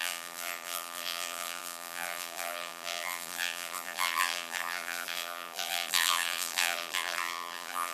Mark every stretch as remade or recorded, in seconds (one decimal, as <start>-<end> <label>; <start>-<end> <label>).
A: 0.0-7.9 remade